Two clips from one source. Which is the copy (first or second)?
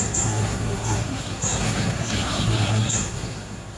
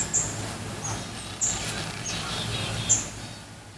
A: first